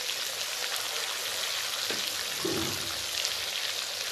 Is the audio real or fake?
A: real